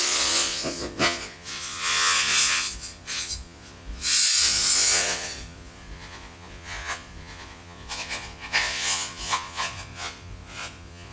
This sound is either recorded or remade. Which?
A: remade